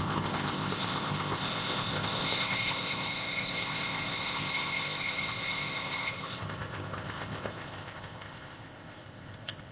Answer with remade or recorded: remade